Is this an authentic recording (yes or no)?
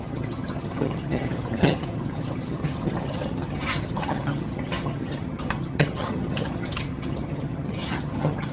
no